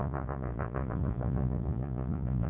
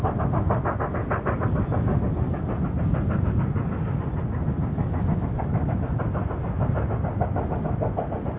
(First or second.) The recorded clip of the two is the second